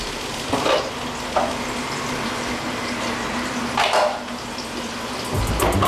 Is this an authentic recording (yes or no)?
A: yes